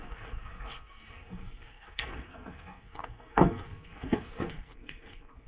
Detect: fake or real fake